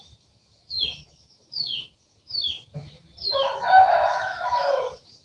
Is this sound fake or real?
fake